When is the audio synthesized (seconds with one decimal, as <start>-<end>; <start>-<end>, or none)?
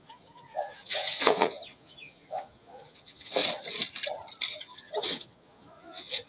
0.0-3.4; 4.5-6.3